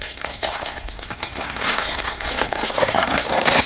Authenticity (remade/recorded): remade